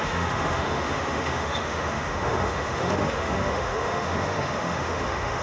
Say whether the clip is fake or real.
fake